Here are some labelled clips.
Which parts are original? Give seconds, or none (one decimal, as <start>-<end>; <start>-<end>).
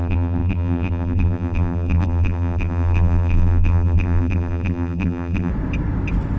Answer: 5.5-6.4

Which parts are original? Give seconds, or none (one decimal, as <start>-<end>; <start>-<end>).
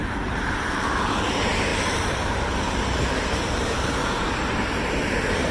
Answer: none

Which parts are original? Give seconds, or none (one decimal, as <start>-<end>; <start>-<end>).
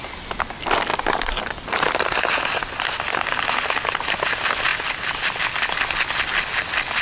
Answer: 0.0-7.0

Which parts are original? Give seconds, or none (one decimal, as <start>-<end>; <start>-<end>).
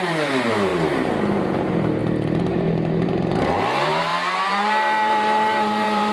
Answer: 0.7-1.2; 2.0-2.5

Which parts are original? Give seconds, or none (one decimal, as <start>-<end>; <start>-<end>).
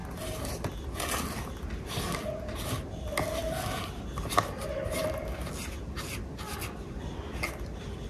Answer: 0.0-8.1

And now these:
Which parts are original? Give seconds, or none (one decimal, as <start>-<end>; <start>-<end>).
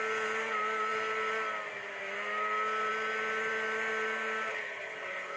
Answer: 0.0-4.5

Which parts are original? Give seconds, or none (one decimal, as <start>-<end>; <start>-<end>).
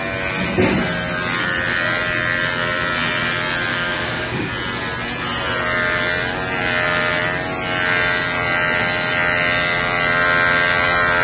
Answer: 0.0-3.7; 4.5-11.2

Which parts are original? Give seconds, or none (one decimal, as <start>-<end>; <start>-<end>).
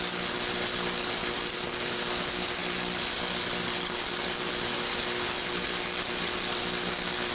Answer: 0.0-7.3